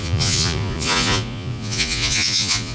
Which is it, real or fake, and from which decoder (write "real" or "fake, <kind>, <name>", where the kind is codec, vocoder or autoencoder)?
fake, vocoder, Vocos